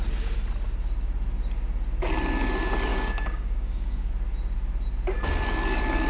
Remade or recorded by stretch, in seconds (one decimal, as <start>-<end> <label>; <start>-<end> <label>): 0.0-2.9 recorded; 2.9-4.1 remade; 4.1-6.1 recorded